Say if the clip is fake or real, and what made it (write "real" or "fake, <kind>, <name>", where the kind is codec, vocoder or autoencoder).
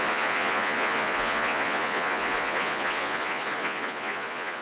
fake, vocoder, Vocos